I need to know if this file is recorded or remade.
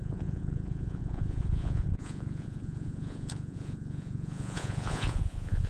remade